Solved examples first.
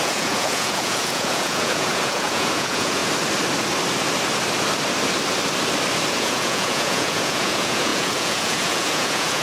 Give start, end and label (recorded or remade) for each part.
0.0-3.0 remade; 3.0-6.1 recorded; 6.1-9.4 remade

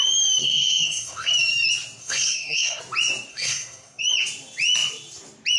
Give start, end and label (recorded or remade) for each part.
0.0-0.4 recorded; 0.4-1.3 remade; 1.3-2.0 recorded; 2.0-2.8 remade; 2.8-3.3 recorded; 3.3-4.0 remade; 4.0-5.6 recorded